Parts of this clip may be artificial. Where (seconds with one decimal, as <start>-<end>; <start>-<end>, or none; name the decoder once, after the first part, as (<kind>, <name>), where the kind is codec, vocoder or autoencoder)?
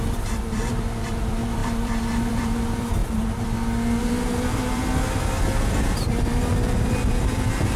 0.0-3.0 (vocoder, BigVGAN v2); 4.0-4.8; 5.7-7.8